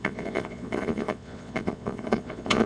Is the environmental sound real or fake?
fake